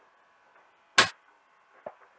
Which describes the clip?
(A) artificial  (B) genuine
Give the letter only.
B